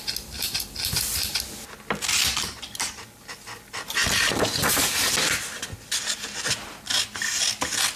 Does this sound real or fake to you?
real